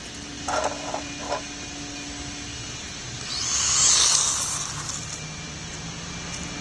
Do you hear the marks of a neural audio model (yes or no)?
no